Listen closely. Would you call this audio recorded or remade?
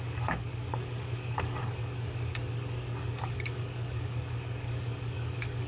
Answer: remade